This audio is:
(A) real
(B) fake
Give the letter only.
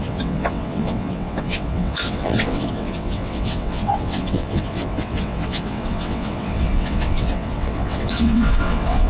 B